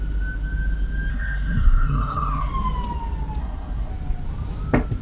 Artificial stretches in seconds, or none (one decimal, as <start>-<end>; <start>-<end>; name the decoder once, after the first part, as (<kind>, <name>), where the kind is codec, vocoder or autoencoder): 1.1-2.5 (codec, SNAC); 3.4-3.9